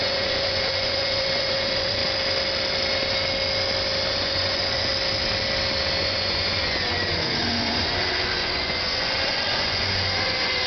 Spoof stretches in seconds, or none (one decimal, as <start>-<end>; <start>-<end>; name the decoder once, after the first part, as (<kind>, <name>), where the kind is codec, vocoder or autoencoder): 0.0-2.0 (vocoder, Vocos); 4.1-4.9; 6.0-10.7